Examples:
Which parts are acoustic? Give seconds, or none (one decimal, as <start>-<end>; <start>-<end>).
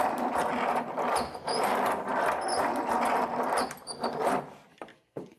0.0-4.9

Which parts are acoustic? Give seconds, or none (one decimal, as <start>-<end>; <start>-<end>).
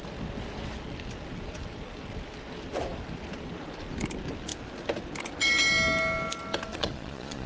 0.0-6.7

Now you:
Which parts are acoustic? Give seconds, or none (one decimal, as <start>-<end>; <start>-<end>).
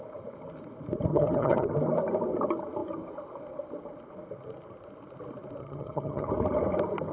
0.0-1.1; 1.7-5.6; 6.3-7.1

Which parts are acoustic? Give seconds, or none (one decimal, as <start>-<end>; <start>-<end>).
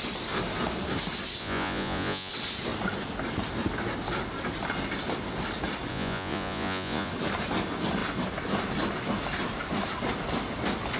0.0-1.4; 2.3-5.9; 7.1-11.0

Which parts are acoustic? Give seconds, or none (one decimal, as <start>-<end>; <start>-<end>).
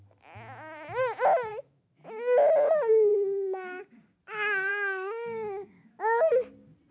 0.0-1.5; 2.0-4.7; 6.3-6.9